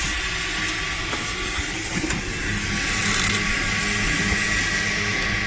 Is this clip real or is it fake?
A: real